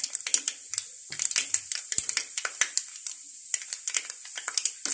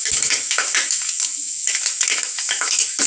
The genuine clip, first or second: first